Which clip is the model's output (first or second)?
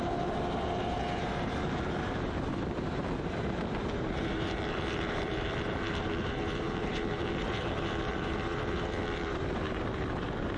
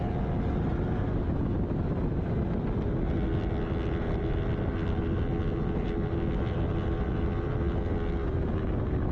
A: first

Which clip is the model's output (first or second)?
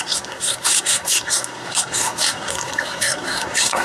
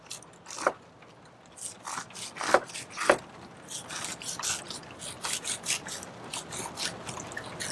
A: first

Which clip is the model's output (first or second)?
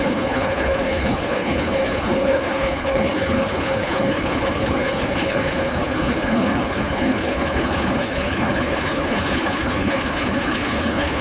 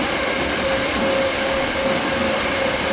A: first